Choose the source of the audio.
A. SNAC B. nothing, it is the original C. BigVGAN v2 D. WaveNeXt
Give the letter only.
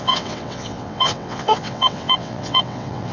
D